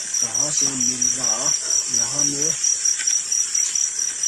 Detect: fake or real real